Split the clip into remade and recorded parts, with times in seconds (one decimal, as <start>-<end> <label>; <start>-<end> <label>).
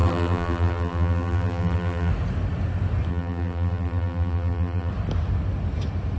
0.0-2.1 remade; 2.1-3.1 recorded; 3.1-4.9 remade; 4.9-6.2 recorded